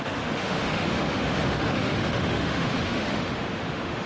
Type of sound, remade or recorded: remade